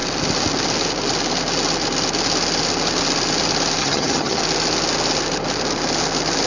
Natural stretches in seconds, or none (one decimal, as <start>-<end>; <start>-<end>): 0.0-3.8; 4.4-6.5